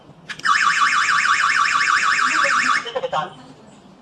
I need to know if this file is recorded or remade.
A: recorded